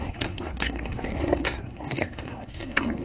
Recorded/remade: remade